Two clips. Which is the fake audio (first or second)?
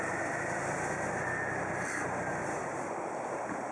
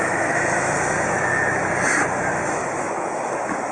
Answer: second